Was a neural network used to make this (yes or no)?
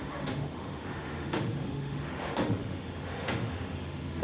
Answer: yes